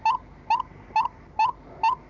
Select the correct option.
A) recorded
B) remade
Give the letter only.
A